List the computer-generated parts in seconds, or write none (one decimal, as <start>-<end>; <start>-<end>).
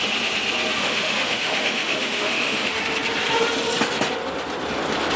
0.8-2.8